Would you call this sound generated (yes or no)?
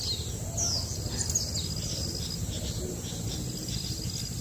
no